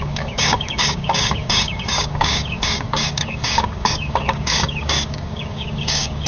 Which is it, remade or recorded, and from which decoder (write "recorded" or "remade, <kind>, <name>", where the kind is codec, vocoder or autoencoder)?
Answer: remade, codec, DAC